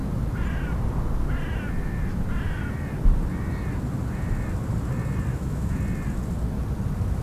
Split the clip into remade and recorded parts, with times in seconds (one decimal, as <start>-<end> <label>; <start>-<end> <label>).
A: 0.0-5.3 recorded; 5.3-5.8 remade; 5.8-7.2 recorded